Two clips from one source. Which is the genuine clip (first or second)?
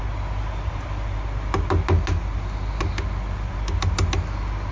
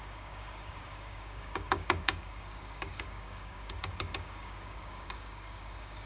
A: first